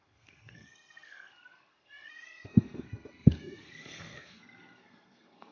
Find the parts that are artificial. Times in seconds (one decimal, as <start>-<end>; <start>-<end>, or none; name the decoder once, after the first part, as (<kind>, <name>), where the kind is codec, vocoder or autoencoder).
0.0-5.5 (codec, SNAC)